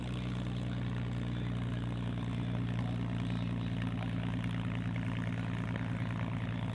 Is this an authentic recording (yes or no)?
yes